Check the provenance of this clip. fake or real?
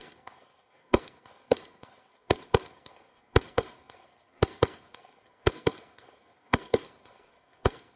fake